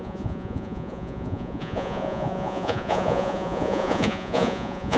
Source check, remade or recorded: remade